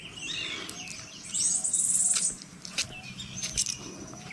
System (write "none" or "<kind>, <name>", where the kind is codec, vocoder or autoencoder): none